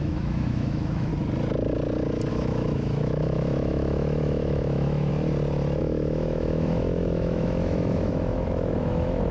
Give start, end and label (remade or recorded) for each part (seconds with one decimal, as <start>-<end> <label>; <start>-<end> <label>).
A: 0.0-1.1 remade; 1.1-2.3 recorded; 2.3-5.1 remade; 5.1-5.8 recorded; 5.8-9.3 remade